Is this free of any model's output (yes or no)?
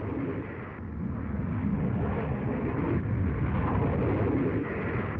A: yes